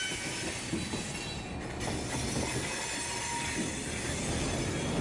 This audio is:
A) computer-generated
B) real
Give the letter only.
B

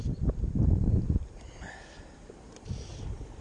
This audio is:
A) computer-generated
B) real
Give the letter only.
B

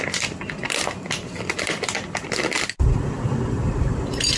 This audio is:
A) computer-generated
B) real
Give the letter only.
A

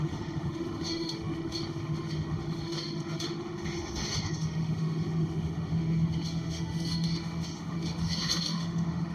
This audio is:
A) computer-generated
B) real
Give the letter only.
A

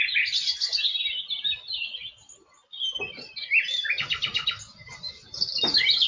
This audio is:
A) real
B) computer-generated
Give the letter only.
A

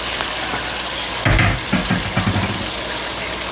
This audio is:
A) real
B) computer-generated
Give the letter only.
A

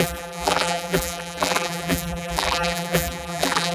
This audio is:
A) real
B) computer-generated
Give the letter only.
B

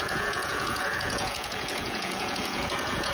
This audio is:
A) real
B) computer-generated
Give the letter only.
B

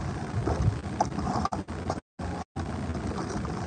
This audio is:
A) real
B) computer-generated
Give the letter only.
A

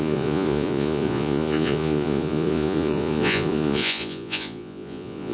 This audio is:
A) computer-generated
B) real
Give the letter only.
A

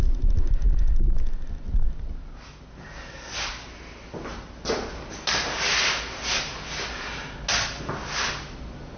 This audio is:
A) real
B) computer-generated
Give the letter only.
A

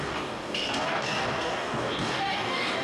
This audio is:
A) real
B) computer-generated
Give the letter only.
B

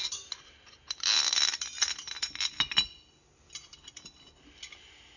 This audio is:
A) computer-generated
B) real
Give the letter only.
B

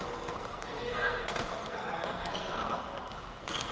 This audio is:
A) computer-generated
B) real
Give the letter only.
A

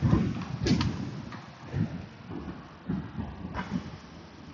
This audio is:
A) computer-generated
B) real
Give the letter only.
B